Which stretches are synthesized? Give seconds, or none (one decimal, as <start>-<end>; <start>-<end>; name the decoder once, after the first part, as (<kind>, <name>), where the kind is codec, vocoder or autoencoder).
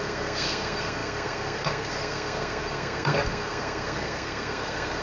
0.0-5.0 (codec, SNAC)